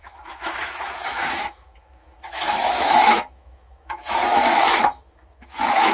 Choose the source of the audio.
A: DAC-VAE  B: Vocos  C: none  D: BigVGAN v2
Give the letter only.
A